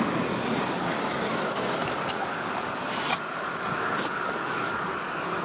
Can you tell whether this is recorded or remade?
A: remade